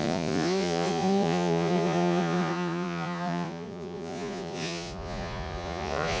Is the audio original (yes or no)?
no